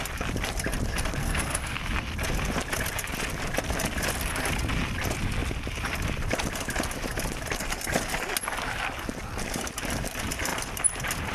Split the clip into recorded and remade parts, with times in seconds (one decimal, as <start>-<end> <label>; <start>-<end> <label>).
0.0-1.2 recorded; 1.2-1.8 remade; 1.8-11.3 recorded

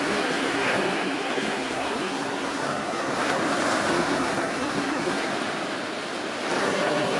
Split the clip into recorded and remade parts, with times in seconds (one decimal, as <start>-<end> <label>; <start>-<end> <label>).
0.0-3.4 remade; 3.4-3.9 recorded; 3.9-5.3 remade; 5.3-6.6 recorded; 6.6-7.2 remade

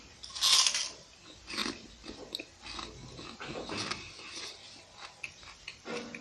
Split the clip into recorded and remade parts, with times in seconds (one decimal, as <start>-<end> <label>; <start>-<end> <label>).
0.0-6.2 recorded

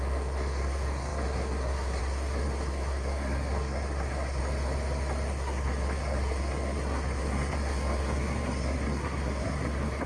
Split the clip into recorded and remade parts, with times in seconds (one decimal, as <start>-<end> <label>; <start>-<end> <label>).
0.0-4.4 remade; 4.4-5.3 recorded; 5.3-10.1 remade

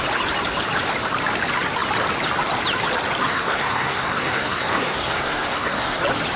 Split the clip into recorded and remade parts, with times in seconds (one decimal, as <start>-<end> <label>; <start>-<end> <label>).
0.0-3.2 recorded; 3.2-6.0 remade; 6.0-6.4 recorded

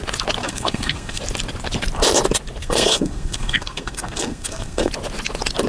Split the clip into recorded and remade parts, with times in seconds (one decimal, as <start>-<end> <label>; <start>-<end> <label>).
0.0-0.4 recorded; 0.4-1.2 remade; 1.2-2.6 recorded; 2.6-4.9 remade; 4.9-5.7 recorded

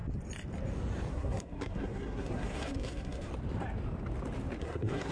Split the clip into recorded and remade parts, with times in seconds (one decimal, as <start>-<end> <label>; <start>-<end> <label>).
0.0-1.1 recorded; 1.1-3.3 remade; 3.3-4.6 recorded; 4.6-5.1 remade

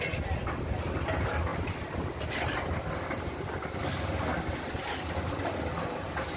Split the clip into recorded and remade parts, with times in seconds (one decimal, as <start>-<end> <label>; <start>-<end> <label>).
0.0-6.4 recorded